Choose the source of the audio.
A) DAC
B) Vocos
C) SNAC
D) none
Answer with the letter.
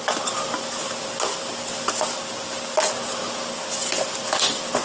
D